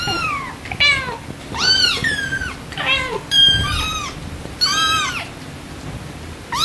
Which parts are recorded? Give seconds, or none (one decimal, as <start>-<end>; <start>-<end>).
0.9-1.4; 2.0-3.3